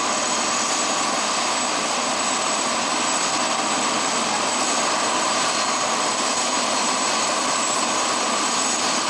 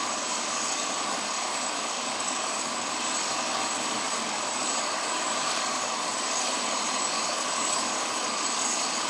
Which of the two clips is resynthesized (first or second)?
second